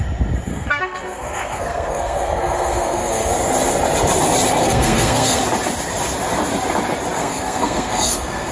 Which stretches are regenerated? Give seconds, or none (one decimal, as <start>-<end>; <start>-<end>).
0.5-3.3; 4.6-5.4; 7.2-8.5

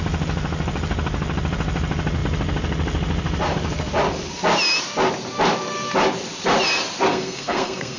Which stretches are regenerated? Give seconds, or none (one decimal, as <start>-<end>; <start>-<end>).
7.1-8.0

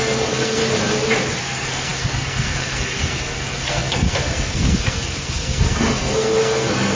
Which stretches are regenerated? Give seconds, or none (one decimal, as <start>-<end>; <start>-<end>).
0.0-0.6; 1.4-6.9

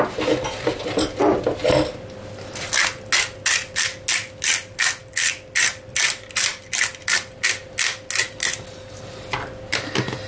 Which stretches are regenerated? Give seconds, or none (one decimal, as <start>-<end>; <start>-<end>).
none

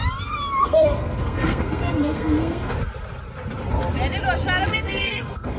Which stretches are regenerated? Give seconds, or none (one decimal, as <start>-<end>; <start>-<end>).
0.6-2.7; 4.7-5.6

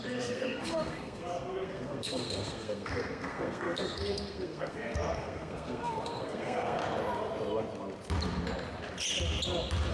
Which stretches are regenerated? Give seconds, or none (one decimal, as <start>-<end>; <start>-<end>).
0.0-6.8

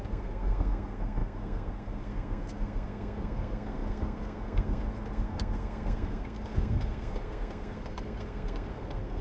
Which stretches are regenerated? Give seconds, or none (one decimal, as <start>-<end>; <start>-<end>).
0.0-9.2